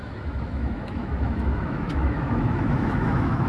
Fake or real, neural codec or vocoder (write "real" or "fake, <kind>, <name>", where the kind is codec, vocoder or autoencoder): fake, autoencoder, DAC-VAE